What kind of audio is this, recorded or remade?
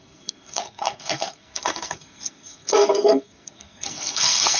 remade